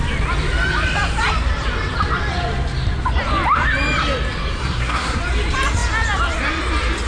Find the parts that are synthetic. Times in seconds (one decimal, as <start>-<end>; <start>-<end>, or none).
4.7-5.2

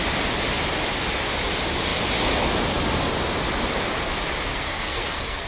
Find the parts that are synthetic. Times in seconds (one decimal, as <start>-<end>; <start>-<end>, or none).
4.5-5.5

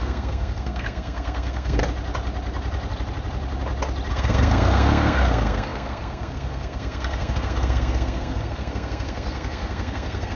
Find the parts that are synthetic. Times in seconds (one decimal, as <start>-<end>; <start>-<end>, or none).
0.0-1.8; 4.1-10.3

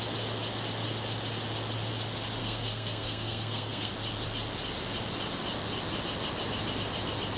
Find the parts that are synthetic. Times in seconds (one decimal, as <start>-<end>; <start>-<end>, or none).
2.4-3.9

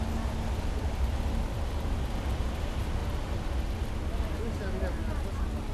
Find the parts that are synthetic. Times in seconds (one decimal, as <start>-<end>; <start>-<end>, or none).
none